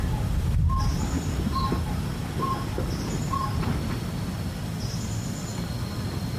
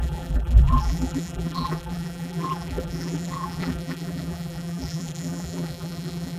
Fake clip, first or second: second